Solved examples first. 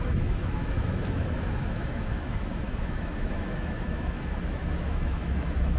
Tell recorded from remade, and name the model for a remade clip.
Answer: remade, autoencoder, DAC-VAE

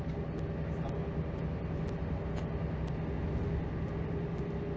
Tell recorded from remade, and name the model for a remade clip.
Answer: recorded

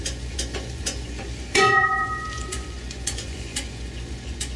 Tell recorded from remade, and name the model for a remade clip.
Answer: remade, vocoder, Vocos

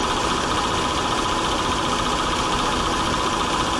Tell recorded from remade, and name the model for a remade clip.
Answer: recorded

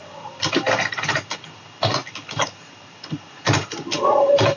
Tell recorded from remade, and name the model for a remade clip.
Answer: recorded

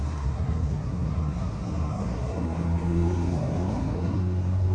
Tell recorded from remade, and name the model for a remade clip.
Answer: remade, codec, SNAC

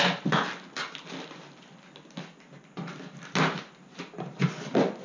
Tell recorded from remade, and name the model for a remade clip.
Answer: recorded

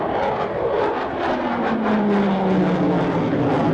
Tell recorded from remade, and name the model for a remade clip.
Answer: recorded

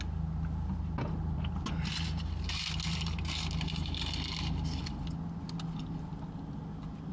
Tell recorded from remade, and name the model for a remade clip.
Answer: recorded